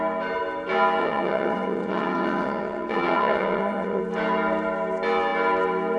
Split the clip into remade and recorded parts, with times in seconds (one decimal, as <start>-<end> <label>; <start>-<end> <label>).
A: 0.0-1.0 recorded; 1.0-4.0 remade; 4.0-6.0 recorded